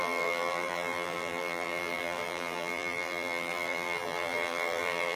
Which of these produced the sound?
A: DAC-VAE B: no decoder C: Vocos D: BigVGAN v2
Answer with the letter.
D